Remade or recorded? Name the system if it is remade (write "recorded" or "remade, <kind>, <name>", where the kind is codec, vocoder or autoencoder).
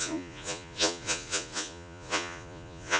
remade, vocoder, Vocos